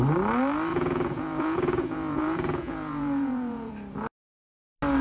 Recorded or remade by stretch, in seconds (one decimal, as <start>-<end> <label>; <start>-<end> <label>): 0.0-0.7 recorded; 0.7-3.7 remade; 3.7-5.0 recorded